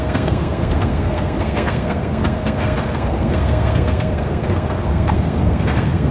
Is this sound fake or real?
fake